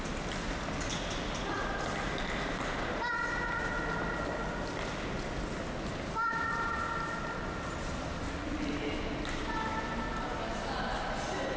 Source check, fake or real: real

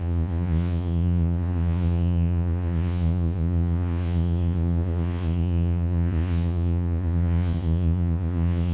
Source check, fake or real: fake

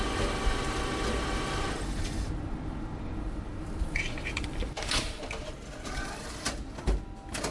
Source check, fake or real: real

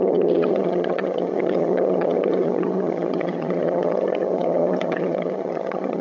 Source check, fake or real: fake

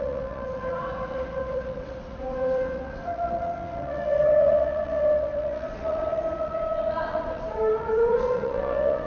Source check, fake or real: fake